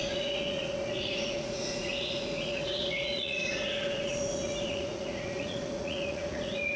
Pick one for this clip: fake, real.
fake